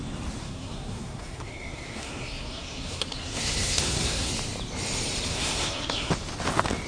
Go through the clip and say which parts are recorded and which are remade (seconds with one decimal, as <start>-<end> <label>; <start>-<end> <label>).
0.0-0.4 recorded; 0.4-4.3 remade; 4.3-5.3 recorded; 5.3-6.1 remade; 6.1-6.9 recorded

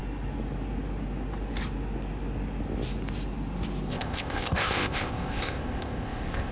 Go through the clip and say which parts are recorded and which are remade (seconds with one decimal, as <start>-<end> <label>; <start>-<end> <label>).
0.0-3.9 recorded; 3.9-6.5 remade

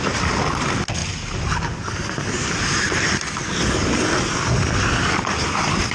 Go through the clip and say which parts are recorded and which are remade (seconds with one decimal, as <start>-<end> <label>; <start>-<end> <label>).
0.0-1.0 recorded; 1.0-1.5 remade; 1.5-2.4 recorded; 2.4-2.9 remade; 2.9-5.9 recorded

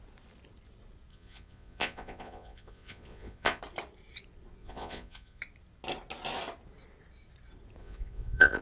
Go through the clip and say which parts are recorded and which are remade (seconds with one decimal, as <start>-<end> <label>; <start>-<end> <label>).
0.0-1.1 recorded; 1.1-3.6 remade; 3.6-4.6 recorded; 4.6-5.4 remade; 5.4-7.8 recorded; 7.8-8.6 remade

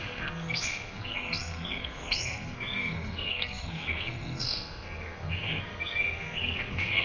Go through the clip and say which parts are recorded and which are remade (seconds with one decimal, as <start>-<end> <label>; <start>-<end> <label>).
0.0-7.0 remade

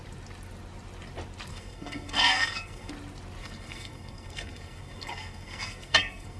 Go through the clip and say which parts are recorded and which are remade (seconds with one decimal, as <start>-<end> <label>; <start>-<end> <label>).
0.0-1.5 recorded; 1.5-2.9 remade; 2.9-3.4 recorded; 3.4-6.4 remade

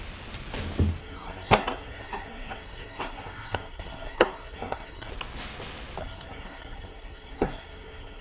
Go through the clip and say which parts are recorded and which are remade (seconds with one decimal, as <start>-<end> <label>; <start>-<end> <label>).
0.0-1.0 recorded; 1.0-5.1 remade; 5.1-6.0 recorded; 6.0-8.2 remade

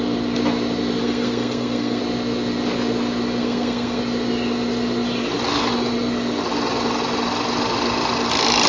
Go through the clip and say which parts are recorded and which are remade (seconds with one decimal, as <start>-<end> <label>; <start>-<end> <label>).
0.0-1.0 recorded; 1.0-2.0 remade; 2.0-3.4 recorded; 3.4-4.0 remade; 4.0-8.7 recorded